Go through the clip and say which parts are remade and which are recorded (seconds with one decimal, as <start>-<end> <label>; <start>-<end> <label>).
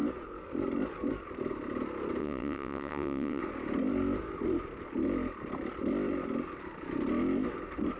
0.0-2.2 recorded; 2.2-3.4 remade; 3.4-8.0 recorded